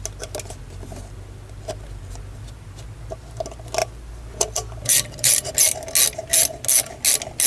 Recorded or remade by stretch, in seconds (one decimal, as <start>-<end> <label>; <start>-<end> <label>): 0.0-3.8 recorded; 3.8-5.5 remade; 5.5-7.5 recorded